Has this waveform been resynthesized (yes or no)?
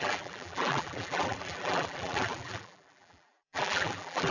yes